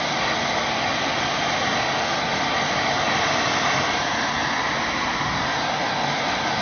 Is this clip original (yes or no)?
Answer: yes